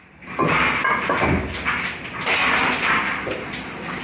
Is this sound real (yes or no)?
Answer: yes